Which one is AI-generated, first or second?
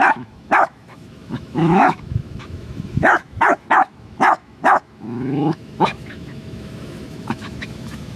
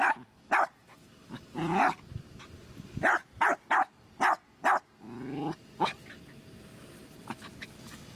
first